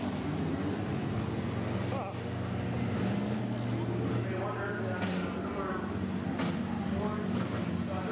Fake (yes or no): no